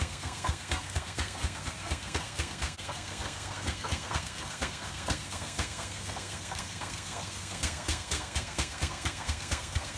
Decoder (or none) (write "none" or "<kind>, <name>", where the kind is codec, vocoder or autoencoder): codec, SNAC